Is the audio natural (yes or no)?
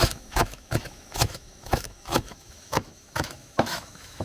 no